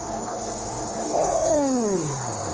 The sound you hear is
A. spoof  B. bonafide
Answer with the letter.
A